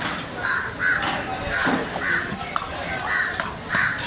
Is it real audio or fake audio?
real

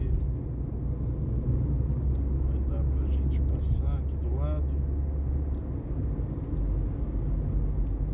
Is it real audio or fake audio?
real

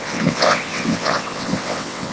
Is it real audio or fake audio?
fake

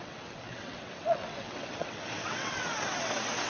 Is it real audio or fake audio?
fake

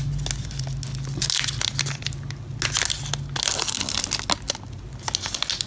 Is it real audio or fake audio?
real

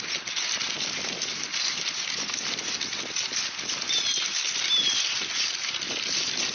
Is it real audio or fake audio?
real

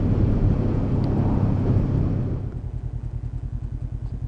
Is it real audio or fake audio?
real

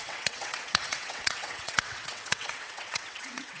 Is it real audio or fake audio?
fake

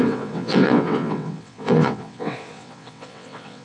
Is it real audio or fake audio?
fake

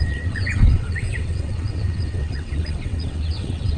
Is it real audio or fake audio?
fake